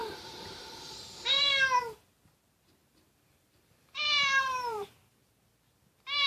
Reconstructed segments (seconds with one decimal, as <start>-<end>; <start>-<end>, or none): 0.0-1.4; 2.8-5.3